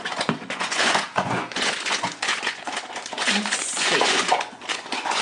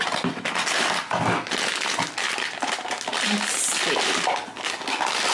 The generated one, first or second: first